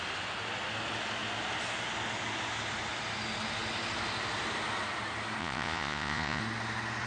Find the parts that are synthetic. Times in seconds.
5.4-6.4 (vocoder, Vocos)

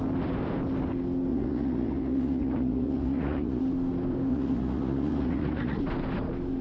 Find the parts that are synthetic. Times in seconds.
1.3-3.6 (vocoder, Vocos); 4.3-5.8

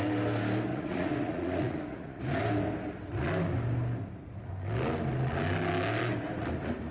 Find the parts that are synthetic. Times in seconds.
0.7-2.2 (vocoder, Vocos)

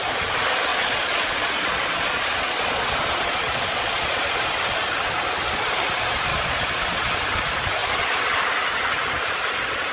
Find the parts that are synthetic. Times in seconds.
0.7-4.6 (vocoder, Vocos); 6.3-7.1

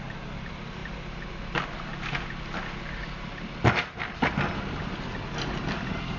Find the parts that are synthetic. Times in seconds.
none

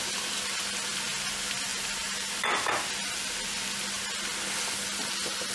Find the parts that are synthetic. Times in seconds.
none

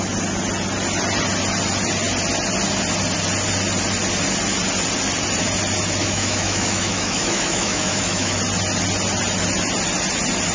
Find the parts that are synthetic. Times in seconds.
6.0-8.4 (autoencoder, DAC-VAE)

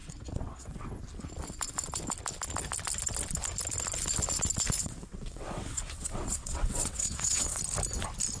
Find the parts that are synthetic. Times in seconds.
0.0-1.0 (vocoder, WaveNeXt); 4.8-7.6